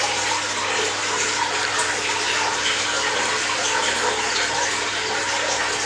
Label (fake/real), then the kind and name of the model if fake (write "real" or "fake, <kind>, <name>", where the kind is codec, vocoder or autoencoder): real